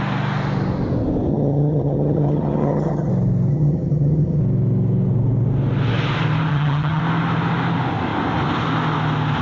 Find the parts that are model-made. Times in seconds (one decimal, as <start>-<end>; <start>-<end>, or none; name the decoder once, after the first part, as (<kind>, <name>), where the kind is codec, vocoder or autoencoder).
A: 1.3-3.1 (vocoder, HiFi-GAN); 3.5-4.4; 6.5-7.0